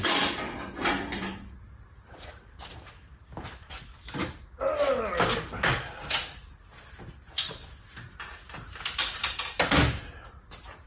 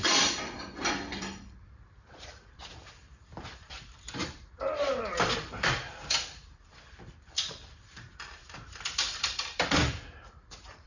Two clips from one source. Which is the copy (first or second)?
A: second